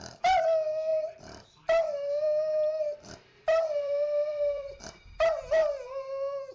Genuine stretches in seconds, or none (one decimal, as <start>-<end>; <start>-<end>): 0.0-0.9; 4.8-5.6; 6.1-6.5